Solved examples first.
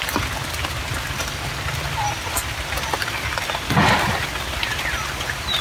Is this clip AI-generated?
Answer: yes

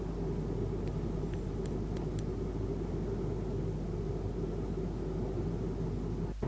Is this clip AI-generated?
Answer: no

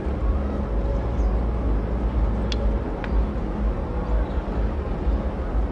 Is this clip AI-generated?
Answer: no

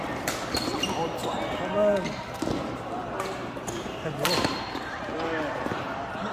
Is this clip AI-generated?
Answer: no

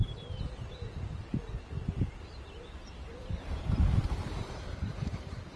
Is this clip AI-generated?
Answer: yes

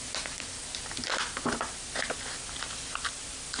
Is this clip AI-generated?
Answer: no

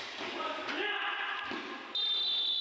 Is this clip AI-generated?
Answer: no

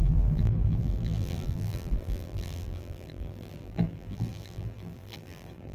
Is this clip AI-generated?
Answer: yes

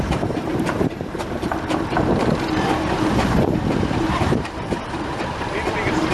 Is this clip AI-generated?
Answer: yes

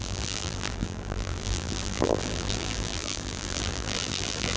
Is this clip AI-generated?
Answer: yes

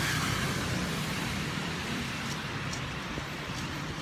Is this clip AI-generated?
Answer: yes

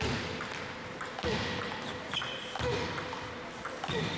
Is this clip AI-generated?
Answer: yes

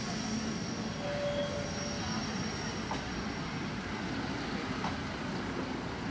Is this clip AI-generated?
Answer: no